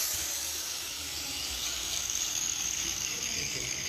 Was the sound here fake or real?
fake